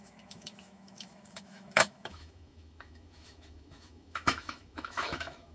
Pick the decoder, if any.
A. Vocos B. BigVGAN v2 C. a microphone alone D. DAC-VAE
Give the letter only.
D